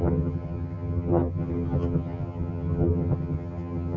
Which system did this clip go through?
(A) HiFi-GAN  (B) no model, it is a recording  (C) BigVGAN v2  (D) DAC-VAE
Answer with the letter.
A